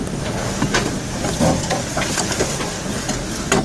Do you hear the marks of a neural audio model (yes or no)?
no